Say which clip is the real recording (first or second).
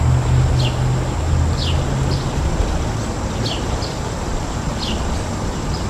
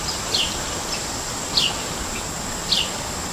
first